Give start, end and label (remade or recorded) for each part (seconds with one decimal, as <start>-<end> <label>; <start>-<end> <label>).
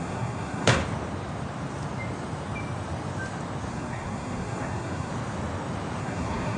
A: 0.0-0.8 remade; 0.8-3.7 recorded; 3.7-5.1 remade; 5.1-6.0 recorded; 6.0-6.6 remade